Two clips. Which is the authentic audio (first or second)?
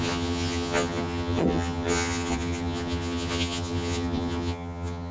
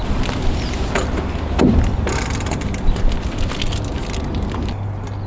second